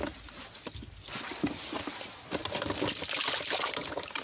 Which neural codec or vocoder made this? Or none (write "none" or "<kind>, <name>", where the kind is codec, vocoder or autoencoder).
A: none